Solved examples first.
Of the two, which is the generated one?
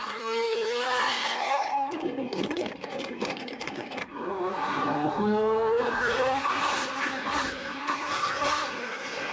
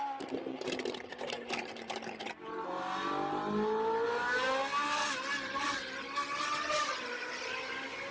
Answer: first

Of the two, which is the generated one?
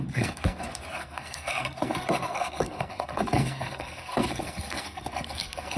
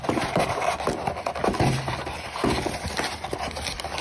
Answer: first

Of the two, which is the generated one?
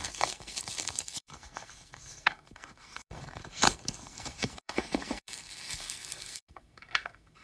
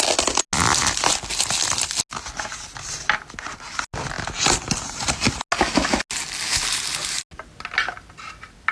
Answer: first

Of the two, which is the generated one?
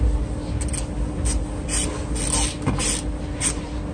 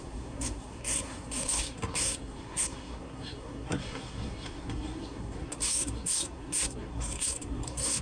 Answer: second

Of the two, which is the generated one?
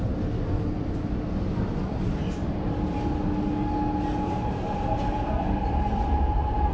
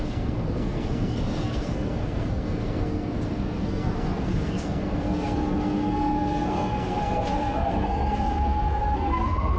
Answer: second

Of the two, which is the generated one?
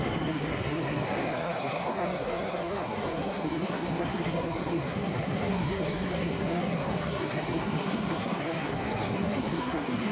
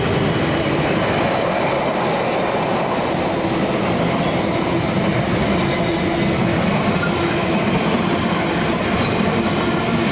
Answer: first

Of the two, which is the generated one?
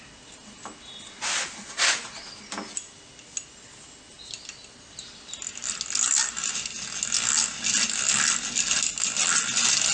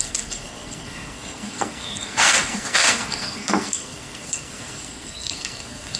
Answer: second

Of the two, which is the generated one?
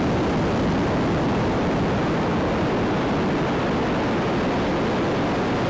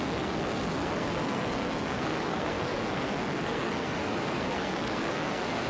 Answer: second